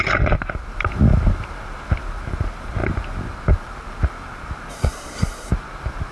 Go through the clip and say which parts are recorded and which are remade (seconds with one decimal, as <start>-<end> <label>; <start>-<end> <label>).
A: 0.0-4.7 recorded; 4.7-5.5 remade; 5.5-6.1 recorded

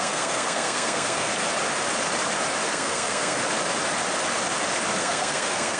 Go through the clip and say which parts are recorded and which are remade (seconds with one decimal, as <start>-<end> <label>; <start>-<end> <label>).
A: 0.0-1.3 remade; 1.3-2.7 recorded; 2.7-3.4 remade; 3.4-5.0 recorded; 5.0-5.8 remade

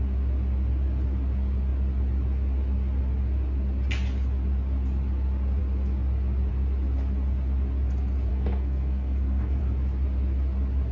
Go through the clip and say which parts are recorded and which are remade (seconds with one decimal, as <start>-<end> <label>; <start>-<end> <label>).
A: 0.0-8.3 recorded; 8.3-9.6 remade; 9.6-10.9 recorded

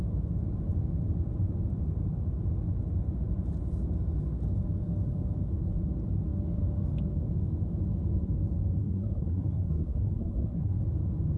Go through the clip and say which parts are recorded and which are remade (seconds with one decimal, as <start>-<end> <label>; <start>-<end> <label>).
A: 0.0-8.8 recorded; 8.8-10.8 remade; 10.8-11.4 recorded

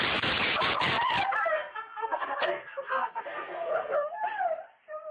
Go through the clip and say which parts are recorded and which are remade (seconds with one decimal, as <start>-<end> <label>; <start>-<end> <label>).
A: 0.0-1.5 recorded; 1.5-4.2 remade; 4.2-5.1 recorded

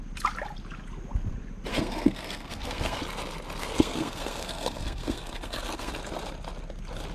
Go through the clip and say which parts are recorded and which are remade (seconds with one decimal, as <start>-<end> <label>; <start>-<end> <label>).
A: 0.0-1.7 recorded; 1.7-3.0 remade; 3.0-3.6 recorded; 3.6-5.9 remade; 5.9-7.1 recorded

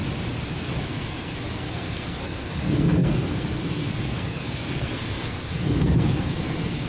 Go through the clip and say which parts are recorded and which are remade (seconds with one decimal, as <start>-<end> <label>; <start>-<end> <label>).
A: 0.0-0.6 recorded; 0.6-6.9 remade